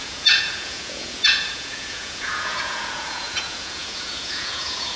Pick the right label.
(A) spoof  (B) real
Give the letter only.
A